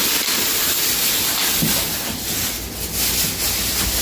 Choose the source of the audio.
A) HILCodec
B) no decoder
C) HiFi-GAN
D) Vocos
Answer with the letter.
B